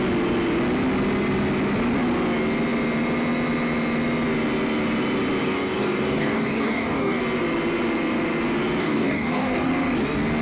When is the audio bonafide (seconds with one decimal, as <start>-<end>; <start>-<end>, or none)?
0.0-5.4; 7.2-8.8; 9.7-10.4